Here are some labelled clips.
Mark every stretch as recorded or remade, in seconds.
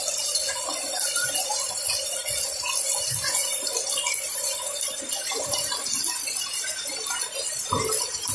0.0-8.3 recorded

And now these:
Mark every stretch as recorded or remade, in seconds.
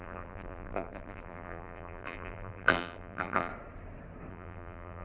0.0-3.5 remade; 3.5-4.3 recorded; 4.3-5.0 remade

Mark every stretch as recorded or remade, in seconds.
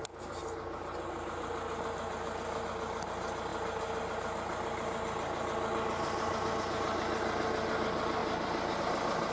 0.0-9.3 recorded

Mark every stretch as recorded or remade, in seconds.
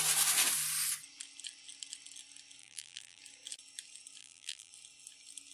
0.0-2.6 recorded; 2.6-3.2 remade; 3.2-4.2 recorded; 4.2-4.7 remade; 4.7-5.5 recorded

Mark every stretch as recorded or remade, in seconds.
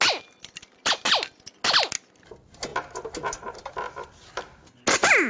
0.0-5.3 recorded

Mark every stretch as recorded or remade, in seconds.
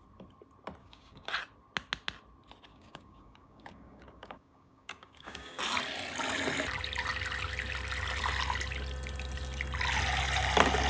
0.0-0.8 recorded; 0.8-1.3 remade; 1.3-2.7 recorded; 2.7-5.6 remade; 5.6-10.9 recorded